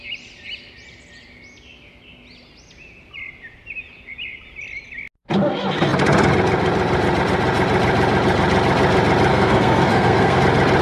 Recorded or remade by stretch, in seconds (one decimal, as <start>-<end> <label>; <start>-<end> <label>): 0.0-9.3 recorded; 9.3-10.4 remade; 10.4-10.8 recorded

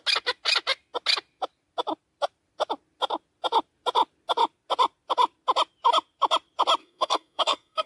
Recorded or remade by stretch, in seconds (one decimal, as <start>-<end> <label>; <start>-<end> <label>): 0.0-6.8 recorded; 6.8-7.9 remade

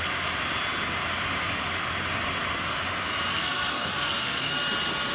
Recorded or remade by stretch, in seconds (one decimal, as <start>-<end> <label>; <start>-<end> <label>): 0.0-3.3 recorded; 3.3-4.5 remade; 4.5-5.1 recorded

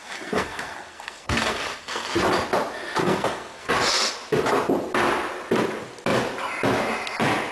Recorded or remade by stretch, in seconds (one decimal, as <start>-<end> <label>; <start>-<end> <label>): 0.0-2.1 remade; 2.1-3.0 recorded; 3.0-3.7 remade; 3.7-7.5 recorded

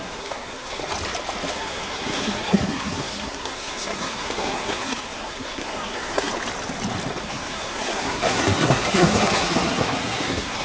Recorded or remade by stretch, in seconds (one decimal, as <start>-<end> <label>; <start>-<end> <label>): 0.0-0.8 remade; 0.8-1.5 recorded; 1.5-6.3 remade; 6.3-7.2 recorded; 7.2-10.6 remade